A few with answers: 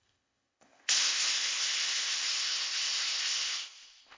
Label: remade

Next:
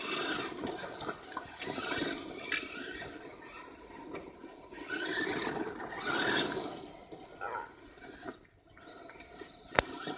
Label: recorded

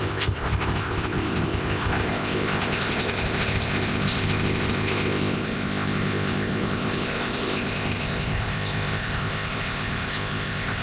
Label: remade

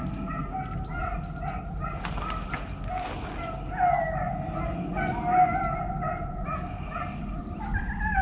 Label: recorded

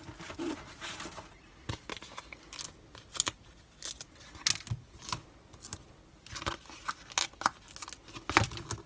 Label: recorded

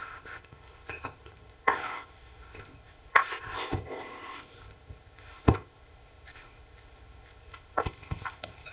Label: remade